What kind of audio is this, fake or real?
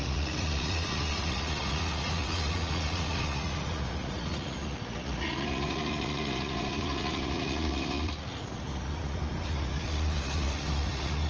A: fake